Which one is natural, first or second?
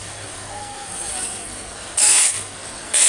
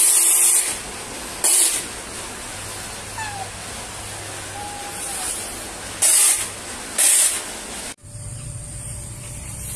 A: second